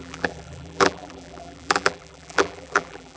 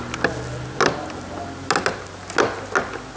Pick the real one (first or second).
second